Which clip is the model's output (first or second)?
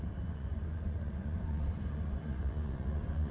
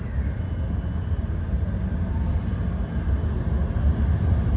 first